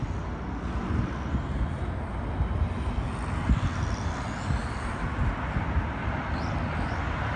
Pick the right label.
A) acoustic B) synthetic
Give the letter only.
A